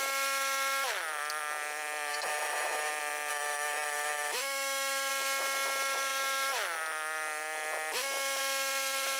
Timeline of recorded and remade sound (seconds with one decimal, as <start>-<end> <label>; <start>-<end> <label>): 0.0-2.1 recorded; 2.1-2.9 remade; 2.9-3.3 recorded; 3.3-5.1 remade; 5.1-9.2 recorded